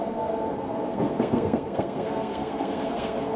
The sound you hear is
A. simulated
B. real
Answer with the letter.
A